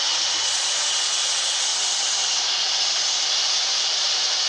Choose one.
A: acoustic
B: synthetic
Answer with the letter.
A